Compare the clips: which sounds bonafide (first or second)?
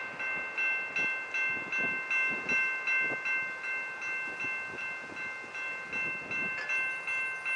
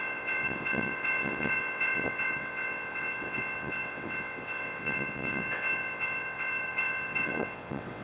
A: first